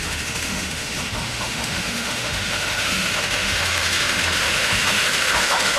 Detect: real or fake fake